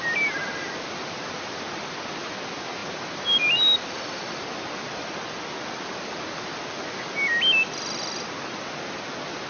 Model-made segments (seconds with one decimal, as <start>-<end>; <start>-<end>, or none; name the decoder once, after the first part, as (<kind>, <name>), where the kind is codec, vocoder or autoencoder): none